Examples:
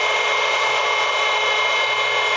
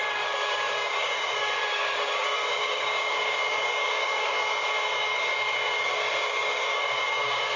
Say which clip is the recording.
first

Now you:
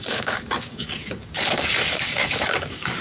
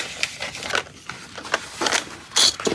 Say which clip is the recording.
second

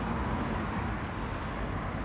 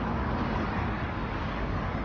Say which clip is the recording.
first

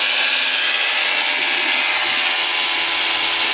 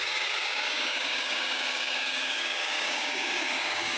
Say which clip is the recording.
first